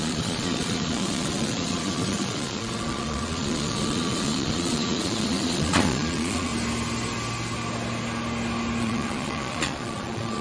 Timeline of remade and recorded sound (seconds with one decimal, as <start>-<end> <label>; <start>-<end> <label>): 0.0-6.5 remade; 6.5-8.8 recorded; 8.8-10.4 remade